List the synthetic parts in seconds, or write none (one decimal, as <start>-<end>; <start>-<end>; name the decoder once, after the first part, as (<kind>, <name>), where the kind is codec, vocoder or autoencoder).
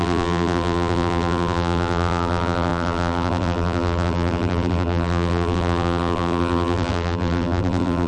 0.0-8.1 (vocoder, BigVGAN v2)